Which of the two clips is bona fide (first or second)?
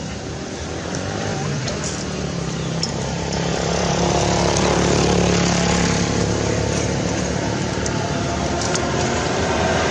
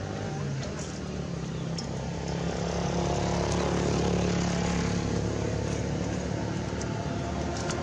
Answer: second